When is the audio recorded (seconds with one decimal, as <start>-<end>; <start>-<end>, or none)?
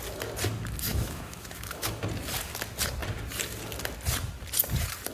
0.0-0.9; 2.0-5.1